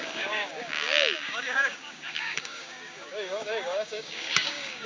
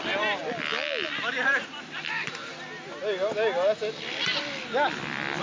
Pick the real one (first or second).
second